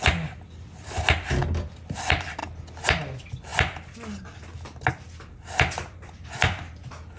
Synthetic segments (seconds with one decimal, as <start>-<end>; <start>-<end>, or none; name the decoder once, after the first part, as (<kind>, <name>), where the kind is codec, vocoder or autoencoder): none

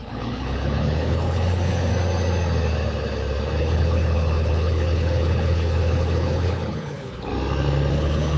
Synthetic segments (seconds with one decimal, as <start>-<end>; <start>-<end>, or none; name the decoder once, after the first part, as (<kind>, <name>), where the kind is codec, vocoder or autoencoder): 0.0-1.9 (codec, HILCodec); 3.6-7.3; 7.9-8.4

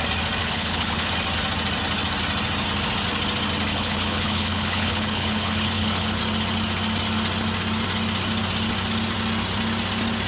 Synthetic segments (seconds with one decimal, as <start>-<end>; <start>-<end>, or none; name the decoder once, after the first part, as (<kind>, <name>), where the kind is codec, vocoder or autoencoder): 0.4-1.1 (codec, HILCodec); 3.7-6.2

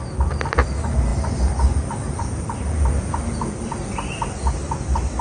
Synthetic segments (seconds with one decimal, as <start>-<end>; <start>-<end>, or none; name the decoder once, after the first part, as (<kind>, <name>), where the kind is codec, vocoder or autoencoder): none

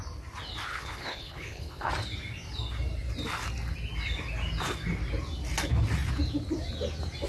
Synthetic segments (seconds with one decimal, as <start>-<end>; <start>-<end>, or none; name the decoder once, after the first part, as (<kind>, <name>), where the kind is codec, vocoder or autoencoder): 0.7-1.9 (codec, HILCodec)

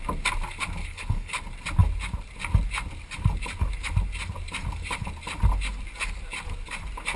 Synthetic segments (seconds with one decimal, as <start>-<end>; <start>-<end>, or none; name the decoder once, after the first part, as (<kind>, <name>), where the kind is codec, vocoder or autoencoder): 0.8-1.4 (codec, HILCodec)